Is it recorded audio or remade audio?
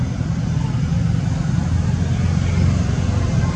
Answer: recorded